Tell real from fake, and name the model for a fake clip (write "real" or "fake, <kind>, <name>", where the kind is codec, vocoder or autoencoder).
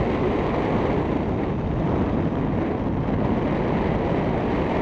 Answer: real